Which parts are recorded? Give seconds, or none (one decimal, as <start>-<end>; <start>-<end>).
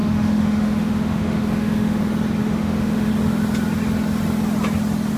2.0-2.4; 3.1-5.2